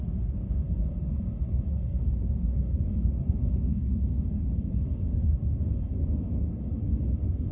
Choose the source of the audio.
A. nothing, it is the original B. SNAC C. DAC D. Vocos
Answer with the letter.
B